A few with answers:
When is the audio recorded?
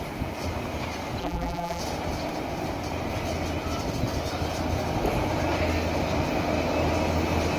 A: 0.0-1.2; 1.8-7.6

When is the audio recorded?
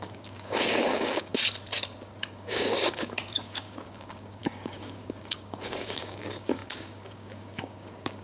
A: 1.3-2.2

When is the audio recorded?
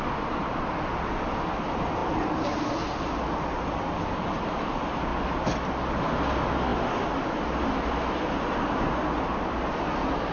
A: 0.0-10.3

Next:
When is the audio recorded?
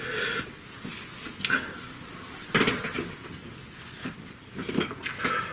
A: 0.0-5.5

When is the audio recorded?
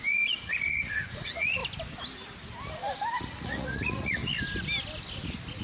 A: 1.6-3.2; 4.2-5.6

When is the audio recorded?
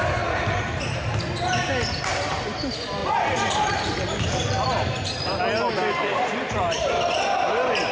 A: 0.0-3.0; 5.4-6.4; 6.9-7.9